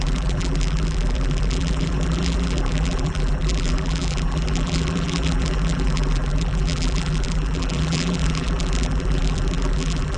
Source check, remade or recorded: remade